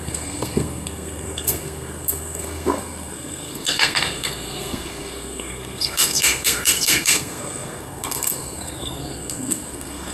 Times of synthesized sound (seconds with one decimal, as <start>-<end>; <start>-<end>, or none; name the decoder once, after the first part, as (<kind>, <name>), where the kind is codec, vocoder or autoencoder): 0.0-10.1 (codec, SNAC)